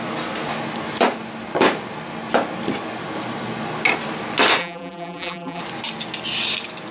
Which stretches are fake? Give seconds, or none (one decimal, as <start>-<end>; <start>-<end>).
4.6-5.6